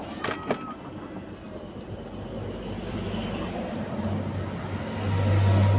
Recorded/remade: recorded